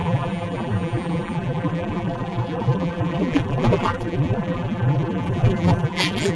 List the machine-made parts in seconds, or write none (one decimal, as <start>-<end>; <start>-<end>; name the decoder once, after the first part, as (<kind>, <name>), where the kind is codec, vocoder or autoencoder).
0.0-6.3 (vocoder, BigVGAN v2)